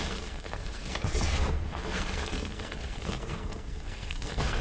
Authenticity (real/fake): fake